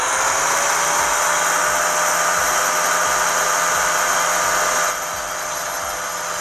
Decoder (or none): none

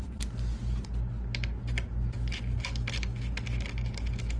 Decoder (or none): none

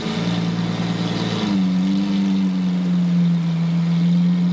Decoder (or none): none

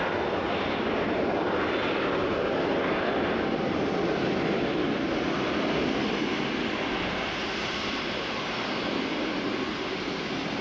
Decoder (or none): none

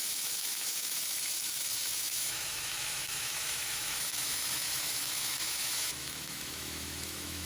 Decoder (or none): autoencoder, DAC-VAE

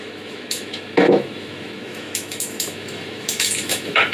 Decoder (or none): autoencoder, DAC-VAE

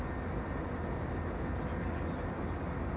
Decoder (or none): none